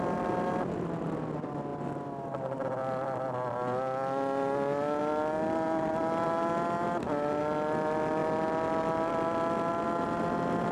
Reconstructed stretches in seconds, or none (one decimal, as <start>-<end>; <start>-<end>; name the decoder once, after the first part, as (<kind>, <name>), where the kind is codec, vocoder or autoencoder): none